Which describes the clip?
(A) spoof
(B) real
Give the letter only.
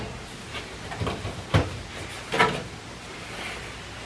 B